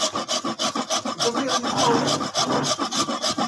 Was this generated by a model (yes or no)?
no